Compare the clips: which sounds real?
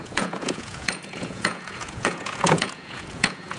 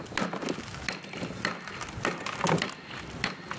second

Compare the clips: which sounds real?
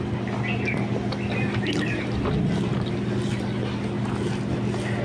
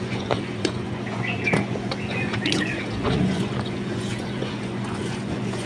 first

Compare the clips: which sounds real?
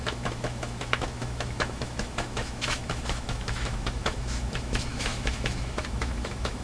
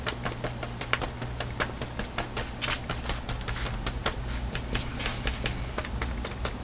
second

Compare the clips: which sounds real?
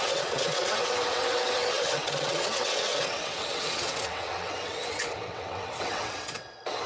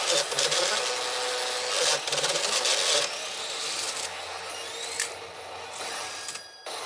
second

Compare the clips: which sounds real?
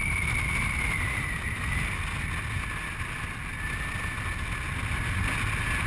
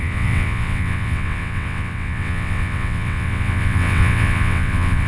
first